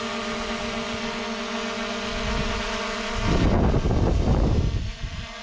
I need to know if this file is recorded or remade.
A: recorded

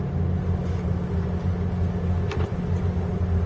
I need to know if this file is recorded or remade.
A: recorded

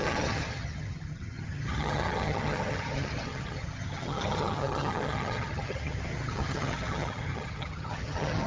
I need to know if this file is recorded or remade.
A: remade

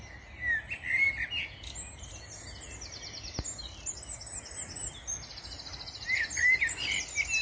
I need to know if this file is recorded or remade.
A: recorded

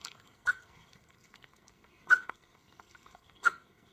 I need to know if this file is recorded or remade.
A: remade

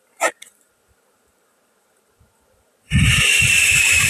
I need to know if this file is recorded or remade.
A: remade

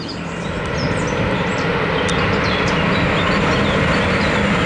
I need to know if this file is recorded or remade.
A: recorded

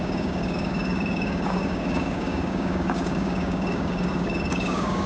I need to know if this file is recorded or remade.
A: remade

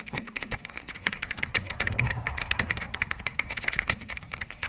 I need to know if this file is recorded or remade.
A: remade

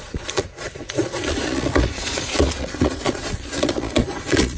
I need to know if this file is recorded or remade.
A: remade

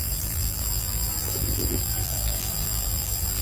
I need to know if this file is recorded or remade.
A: remade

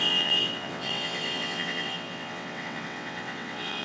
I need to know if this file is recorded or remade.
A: remade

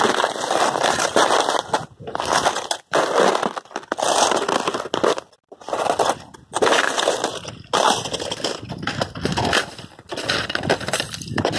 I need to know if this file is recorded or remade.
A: recorded